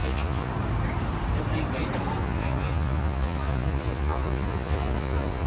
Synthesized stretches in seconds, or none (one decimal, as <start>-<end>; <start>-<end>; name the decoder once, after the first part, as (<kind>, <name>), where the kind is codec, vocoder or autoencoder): 0.0-0.5 (vocoder, Vocos); 2.2-5.5